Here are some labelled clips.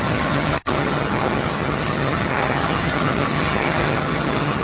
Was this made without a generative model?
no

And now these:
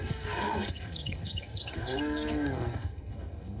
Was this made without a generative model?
no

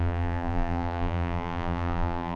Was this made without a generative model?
no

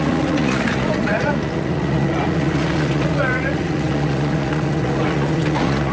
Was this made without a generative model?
no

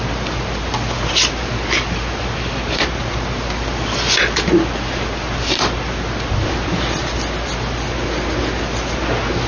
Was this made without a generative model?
yes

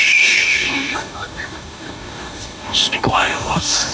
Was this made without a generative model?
no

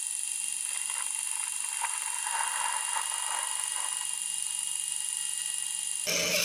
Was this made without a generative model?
yes